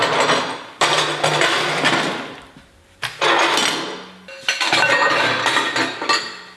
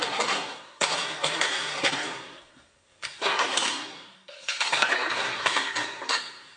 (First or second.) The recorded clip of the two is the first